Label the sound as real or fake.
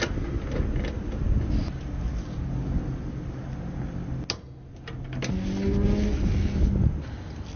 real